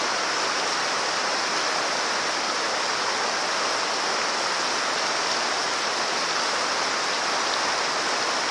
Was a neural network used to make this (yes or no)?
no